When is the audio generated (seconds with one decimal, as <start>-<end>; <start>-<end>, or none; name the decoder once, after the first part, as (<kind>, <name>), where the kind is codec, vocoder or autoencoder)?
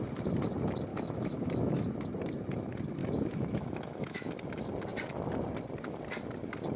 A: 0.9-1.9 (autoencoder, DAC-VAE); 3.0-4.3